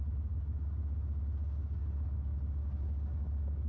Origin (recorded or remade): recorded